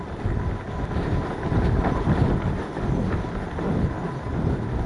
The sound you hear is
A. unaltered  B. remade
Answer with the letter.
A